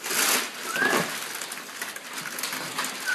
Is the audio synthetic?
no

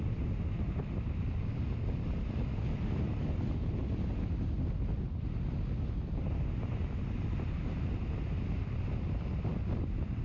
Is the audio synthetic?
no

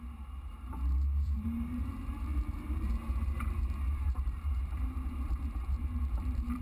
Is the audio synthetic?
yes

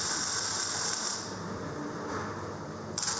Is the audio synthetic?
no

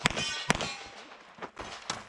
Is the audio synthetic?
no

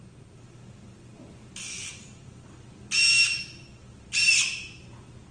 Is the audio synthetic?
no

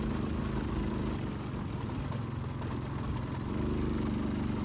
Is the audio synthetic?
no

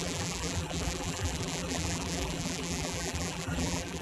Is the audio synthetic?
yes